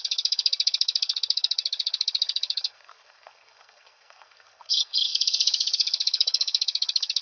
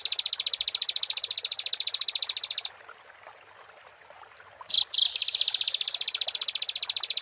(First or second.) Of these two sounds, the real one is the second